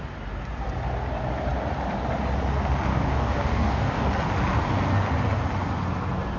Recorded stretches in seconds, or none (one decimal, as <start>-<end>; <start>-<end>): 0.0-2.9; 4.1-6.4